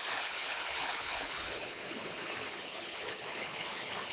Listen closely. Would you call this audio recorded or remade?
remade